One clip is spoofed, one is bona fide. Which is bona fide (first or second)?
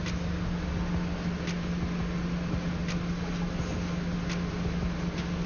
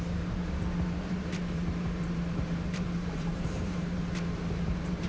first